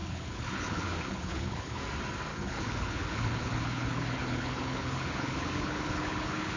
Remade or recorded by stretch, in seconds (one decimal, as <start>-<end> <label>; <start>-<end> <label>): 0.0-1.8 remade; 1.8-2.3 recorded; 2.3-6.6 remade